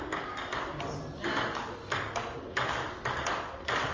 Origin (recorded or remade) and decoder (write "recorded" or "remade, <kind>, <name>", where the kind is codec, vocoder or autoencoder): recorded